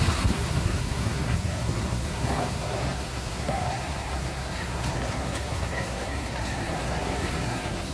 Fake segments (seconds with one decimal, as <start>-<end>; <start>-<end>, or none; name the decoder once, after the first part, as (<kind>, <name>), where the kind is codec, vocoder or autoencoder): 0.0-7.9 (codec, SNAC)